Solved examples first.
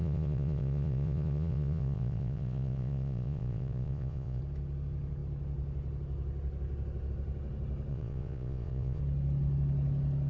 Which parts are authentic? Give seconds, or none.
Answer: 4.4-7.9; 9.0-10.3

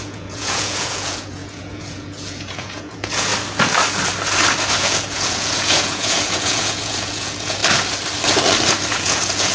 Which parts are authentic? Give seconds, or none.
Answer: 3.3-4.8; 7.6-8.9

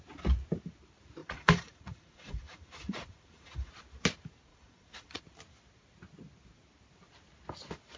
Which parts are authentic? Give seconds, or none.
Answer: 0.0-1.2; 3.7-4.5; 5.2-8.0

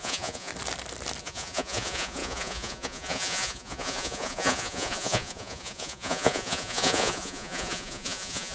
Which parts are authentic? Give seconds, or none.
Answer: 0.5-1.2

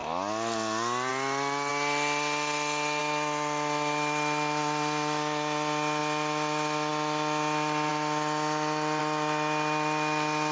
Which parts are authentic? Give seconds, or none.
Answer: 0.0-10.5

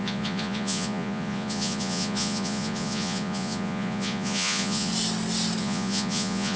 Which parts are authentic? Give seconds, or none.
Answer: 4.9-5.6

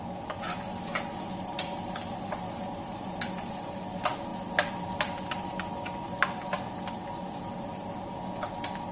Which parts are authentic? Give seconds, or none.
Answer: 0.0-8.9